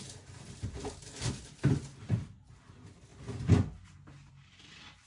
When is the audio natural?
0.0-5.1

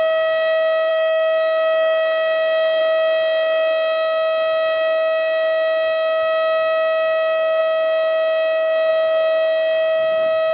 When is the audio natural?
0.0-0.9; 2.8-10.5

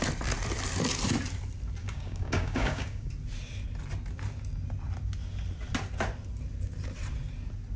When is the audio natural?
0.0-1.8; 3.1-7.8